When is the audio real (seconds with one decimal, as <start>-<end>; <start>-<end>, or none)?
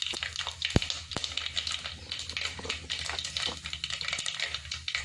0.0-5.0